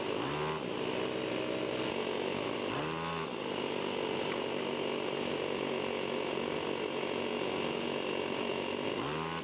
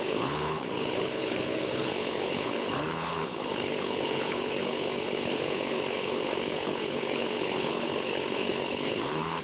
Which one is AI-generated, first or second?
second